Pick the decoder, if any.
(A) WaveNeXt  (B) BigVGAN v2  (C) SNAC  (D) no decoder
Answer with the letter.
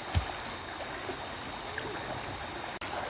D